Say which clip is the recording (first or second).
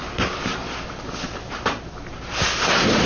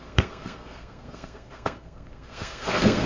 first